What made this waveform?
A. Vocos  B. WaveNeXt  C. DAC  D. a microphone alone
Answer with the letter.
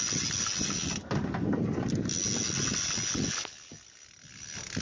D